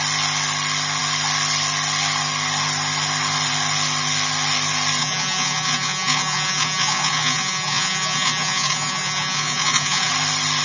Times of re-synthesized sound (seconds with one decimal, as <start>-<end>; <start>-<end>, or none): 5.0-10.1